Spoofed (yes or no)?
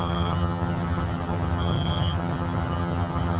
yes